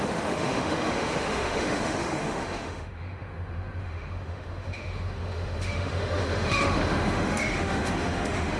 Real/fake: fake